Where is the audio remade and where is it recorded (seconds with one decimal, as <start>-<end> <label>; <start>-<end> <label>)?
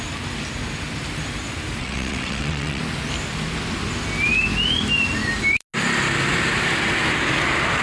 0.0-1.8 recorded; 1.8-2.8 remade; 2.8-7.8 recorded